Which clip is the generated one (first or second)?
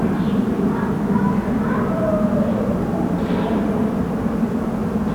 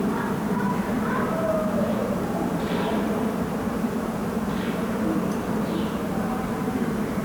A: second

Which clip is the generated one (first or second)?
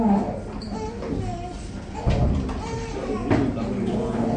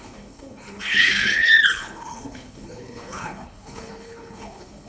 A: second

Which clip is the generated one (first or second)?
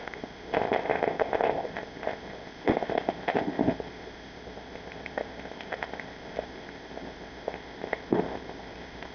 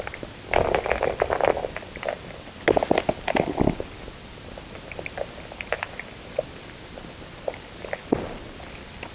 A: first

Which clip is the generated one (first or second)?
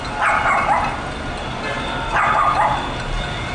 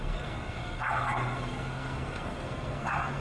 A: second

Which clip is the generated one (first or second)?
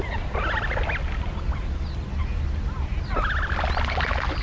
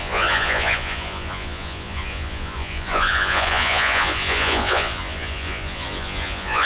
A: second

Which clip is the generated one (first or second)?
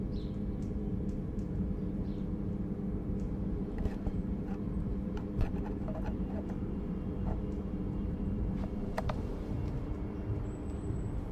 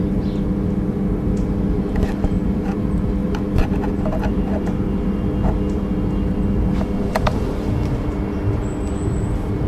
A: first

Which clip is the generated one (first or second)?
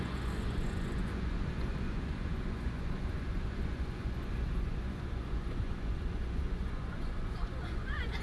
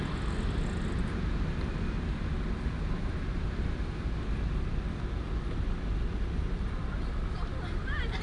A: first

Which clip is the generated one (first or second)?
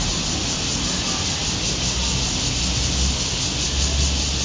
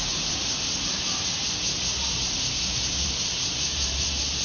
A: second